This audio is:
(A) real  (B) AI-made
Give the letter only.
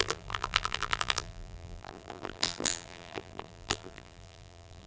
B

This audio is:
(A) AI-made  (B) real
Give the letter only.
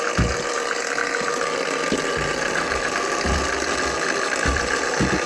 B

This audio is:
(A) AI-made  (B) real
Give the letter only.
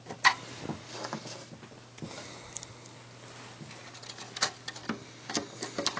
B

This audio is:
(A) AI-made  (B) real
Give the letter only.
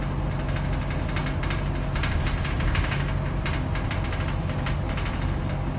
B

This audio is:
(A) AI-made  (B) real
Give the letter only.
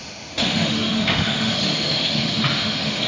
A